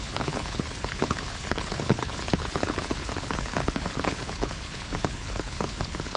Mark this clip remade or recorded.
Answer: remade